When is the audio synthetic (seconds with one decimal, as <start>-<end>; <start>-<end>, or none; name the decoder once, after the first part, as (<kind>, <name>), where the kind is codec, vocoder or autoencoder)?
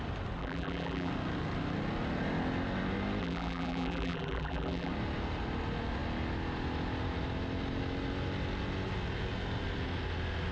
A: 0.4-1.1 (vocoder, BigVGAN v2); 3.2-4.9